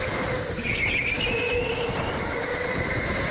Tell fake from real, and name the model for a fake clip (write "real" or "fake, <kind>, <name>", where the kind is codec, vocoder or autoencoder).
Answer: real